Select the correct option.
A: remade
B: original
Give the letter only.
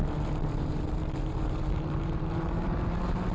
A